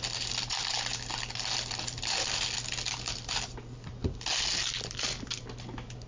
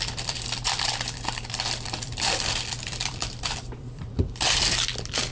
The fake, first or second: second